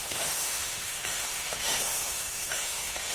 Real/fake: fake